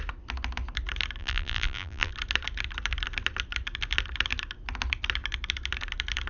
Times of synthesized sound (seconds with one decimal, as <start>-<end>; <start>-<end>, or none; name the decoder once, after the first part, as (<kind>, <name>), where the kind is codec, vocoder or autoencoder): 1.2-2.1 (vocoder, BigVGAN v2)